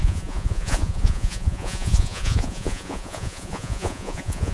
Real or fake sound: fake